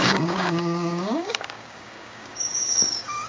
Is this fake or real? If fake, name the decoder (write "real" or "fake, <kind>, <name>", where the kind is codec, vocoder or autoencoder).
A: fake, codec, DAC